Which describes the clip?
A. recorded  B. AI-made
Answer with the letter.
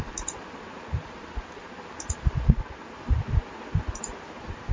A